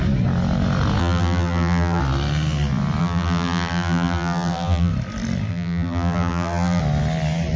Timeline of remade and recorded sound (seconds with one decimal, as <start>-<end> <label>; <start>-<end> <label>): 0.0-1.0 recorded; 1.0-2.0 remade; 2.0-3.0 recorded; 3.0-4.9 remade; 4.9-5.5 recorded; 5.5-6.8 remade; 6.8-7.6 recorded